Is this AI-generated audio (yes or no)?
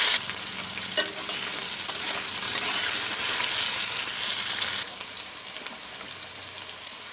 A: no